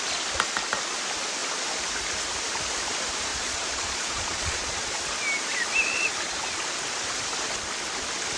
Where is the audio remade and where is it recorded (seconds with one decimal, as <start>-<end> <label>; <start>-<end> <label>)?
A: 0.0-3.3 recorded; 3.3-5.0 remade; 5.0-8.4 recorded

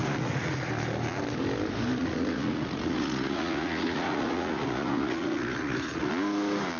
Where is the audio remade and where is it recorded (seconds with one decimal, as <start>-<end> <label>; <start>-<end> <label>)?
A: 0.0-0.7 remade; 0.7-2.0 recorded; 2.0-6.1 remade; 6.1-6.8 recorded